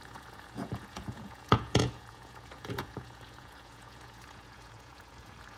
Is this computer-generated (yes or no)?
yes